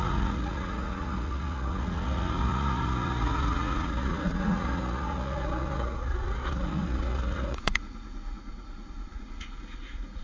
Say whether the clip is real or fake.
fake